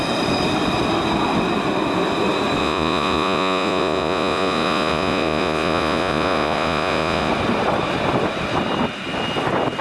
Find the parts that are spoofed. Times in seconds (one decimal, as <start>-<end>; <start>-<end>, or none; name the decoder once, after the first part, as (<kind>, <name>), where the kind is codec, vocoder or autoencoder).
2.6-7.3 (vocoder, Vocos)